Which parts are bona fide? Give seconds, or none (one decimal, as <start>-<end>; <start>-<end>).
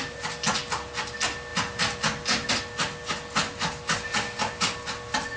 0.0-5.4